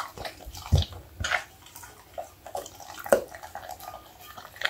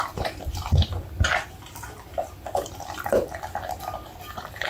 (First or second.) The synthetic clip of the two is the second